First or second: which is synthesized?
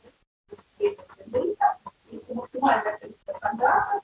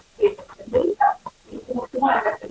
second